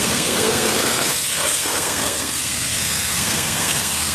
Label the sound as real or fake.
fake